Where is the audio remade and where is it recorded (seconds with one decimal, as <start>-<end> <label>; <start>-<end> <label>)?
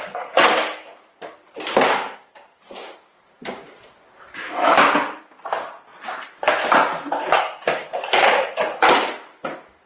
0.0-9.9 recorded